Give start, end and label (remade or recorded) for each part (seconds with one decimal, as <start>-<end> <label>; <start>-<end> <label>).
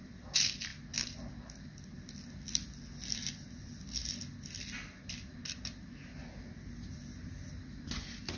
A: 0.0-8.4 recorded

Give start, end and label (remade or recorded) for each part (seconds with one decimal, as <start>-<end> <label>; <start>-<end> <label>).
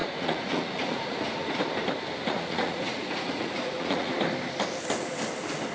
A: 0.0-1.6 remade; 1.6-2.2 recorded; 2.2-4.1 remade; 4.1-5.7 recorded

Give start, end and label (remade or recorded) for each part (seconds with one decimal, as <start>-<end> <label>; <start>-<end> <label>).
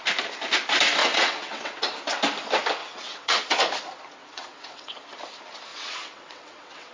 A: 0.0-1.0 recorded; 1.0-1.8 remade; 1.8-2.8 recorded; 2.8-3.4 remade; 3.4-4.2 recorded; 4.2-5.0 remade; 5.0-5.7 recorded; 5.7-6.9 remade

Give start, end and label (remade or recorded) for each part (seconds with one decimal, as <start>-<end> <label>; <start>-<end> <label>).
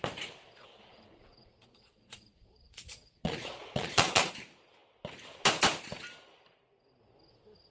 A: 0.0-0.7 recorded; 0.7-4.3 remade; 4.3-7.7 recorded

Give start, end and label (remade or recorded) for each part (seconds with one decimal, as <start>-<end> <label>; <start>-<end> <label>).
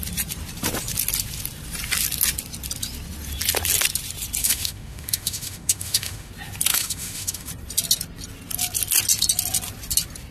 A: 0.0-4.4 recorded; 4.4-6.3 remade; 6.3-6.7 recorded; 6.7-7.5 remade; 7.5-10.3 recorded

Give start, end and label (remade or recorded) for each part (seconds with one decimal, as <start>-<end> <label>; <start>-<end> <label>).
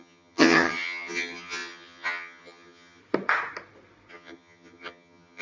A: 0.0-3.0 remade; 3.0-4.1 recorded; 4.1-5.4 remade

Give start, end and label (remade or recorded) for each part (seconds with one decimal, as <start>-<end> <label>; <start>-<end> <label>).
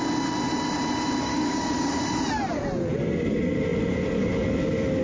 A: 0.0-1.2 recorded; 1.2-2.0 remade; 2.0-5.0 recorded